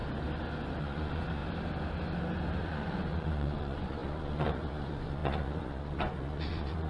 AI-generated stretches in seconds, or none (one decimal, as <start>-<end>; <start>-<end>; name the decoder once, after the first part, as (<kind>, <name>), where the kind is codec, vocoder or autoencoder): 0.8-1.4 (vocoder, Vocos); 2.6-6.9